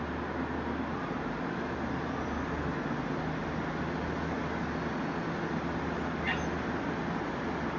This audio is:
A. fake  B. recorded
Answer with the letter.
B